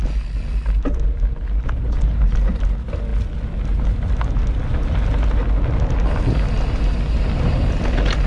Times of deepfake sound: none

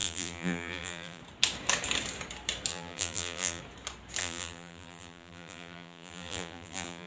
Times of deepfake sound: 0.0-1.2 (vocoder, BigVGAN v2); 2.7-3.6; 4.2-7.1

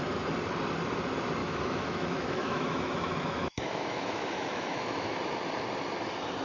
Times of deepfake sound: 1.4-5.2 (autoencoder, DAC-VAE)

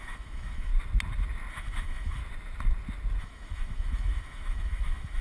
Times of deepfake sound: 0.0-0.7 (autoencoder, DAC-VAE); 1.5-2.2; 3.2-5.2

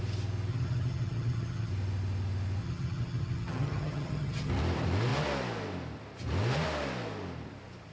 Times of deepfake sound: 0.5-1.7 (vocoder, HiFi-GAN); 2.6-4.5

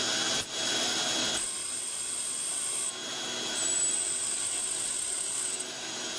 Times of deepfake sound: none

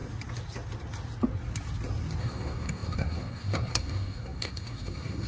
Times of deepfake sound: 2.2-5.3 (codec, SNAC)

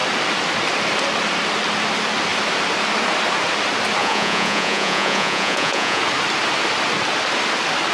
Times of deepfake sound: 4.0-6.0 (vocoder, Vocos)